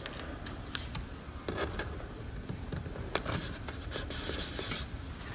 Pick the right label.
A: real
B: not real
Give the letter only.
A